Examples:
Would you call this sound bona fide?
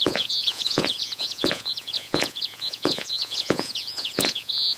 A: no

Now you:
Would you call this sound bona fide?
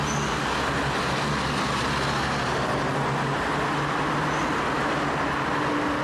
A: yes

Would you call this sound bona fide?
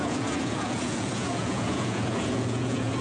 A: no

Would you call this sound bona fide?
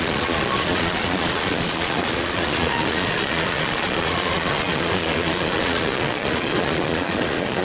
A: no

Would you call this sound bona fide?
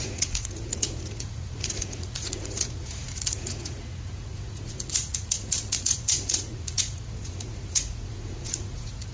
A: no